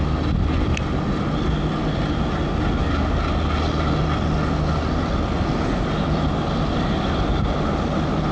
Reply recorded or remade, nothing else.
recorded